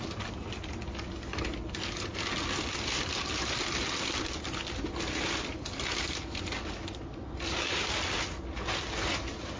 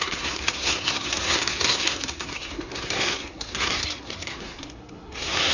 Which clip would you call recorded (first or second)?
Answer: first